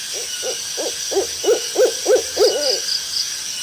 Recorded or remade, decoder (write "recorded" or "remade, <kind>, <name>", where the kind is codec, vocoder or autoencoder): recorded